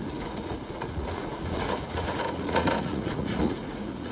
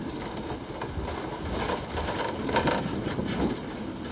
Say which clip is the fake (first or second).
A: first